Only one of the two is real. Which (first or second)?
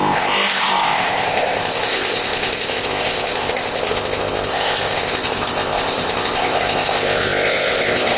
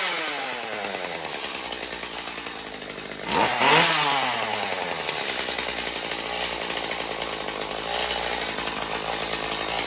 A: second